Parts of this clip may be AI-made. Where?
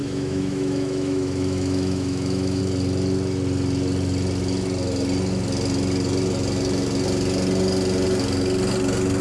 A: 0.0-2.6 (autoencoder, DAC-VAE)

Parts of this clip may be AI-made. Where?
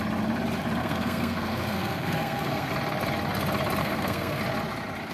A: 0.8-2.7 (codec, SNAC); 3.8-4.4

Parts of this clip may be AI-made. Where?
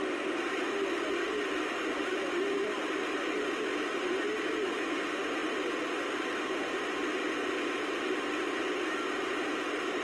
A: none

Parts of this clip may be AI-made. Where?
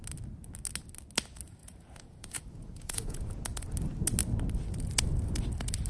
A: 1.6-3.3 (vocoder, Vocos)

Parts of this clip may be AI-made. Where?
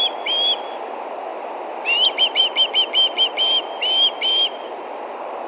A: 1.3-2.4 (vocoder, BigVGAN v2)